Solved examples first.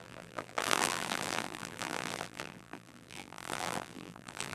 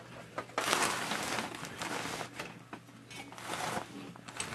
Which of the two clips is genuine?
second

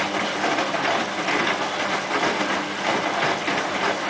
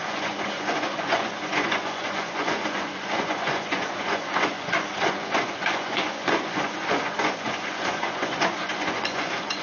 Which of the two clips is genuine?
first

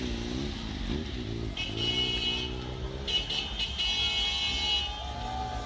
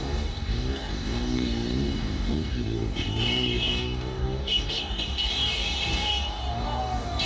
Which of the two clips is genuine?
first